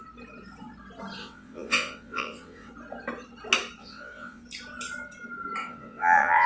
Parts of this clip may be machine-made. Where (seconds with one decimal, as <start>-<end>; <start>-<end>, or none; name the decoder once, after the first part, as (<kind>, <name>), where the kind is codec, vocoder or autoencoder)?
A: 1.2-2.7 (vocoder, WaveNeXt); 3.8-4.4; 5.6-6.5